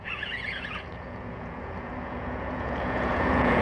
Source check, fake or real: fake